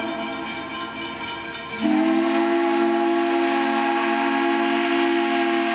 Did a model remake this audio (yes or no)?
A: no